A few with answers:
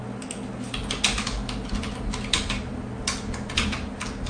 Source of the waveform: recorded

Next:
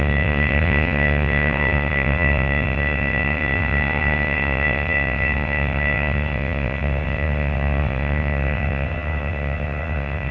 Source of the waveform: remade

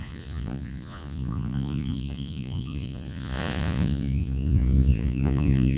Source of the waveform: remade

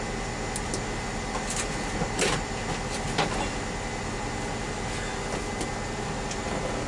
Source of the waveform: recorded